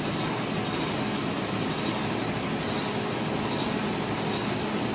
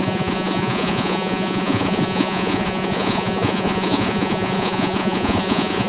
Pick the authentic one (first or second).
first